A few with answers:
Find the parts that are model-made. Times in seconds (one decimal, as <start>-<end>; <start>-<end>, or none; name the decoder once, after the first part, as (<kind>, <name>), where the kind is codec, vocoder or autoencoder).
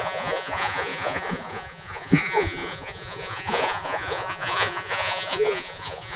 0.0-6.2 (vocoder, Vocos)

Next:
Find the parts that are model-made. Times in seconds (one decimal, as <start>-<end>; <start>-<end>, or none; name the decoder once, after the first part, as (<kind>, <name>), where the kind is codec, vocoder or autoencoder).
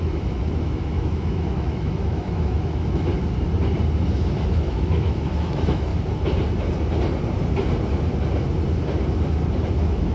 0.0-3.1 (autoencoder, DAC-VAE); 4.1-5.9; 9.7-10.1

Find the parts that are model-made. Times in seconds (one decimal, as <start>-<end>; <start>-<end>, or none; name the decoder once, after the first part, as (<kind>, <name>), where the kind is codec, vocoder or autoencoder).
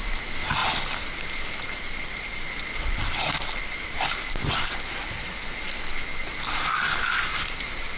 none